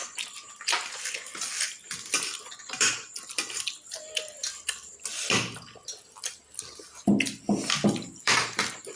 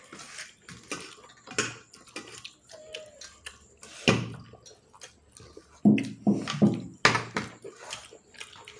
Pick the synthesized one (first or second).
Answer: first